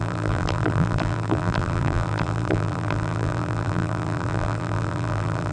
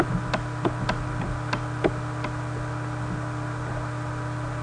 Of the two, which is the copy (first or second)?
first